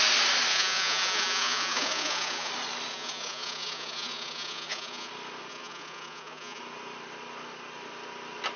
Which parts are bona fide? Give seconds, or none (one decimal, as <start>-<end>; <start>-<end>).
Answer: 0.0-0.5; 2.5-2.9; 5.1-5.5; 6.6-8.6